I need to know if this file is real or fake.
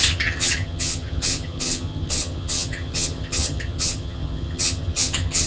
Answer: fake